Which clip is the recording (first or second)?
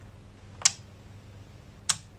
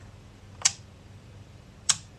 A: first